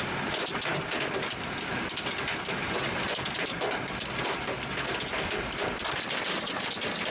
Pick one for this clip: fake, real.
real